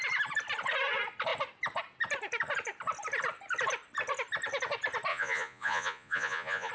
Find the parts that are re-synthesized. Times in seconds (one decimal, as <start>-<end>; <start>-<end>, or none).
5.1-6.7